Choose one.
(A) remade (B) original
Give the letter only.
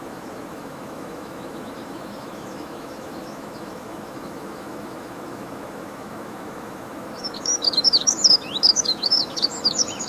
A